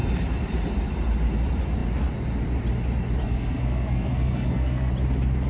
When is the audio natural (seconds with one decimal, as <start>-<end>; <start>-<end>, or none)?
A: 0.0-3.2; 4.9-5.5

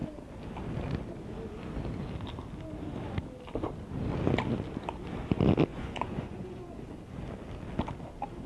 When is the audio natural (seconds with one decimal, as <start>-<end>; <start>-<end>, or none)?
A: 0.0-5.7; 6.7-8.5

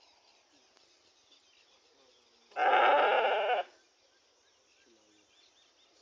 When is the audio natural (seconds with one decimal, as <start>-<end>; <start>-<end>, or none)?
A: 0.0-6.0

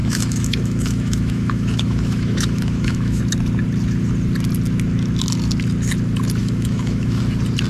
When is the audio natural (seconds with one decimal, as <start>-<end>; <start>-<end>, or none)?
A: 3.2-6.4; 7.2-7.7

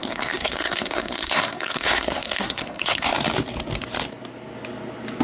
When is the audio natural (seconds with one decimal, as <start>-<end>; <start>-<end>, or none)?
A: 3.1-5.2

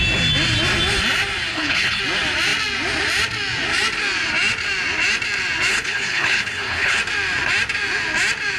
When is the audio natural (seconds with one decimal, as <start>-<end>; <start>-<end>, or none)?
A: 0.0-1.5; 2.0-5.7; 7.0-8.6

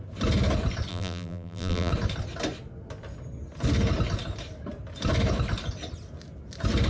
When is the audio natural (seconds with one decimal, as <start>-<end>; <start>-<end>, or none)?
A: 0.0-0.9; 1.9-6.9

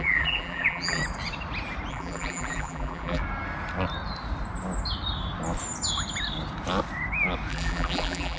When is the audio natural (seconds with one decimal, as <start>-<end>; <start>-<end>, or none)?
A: 1.0-1.9; 3.2-7.5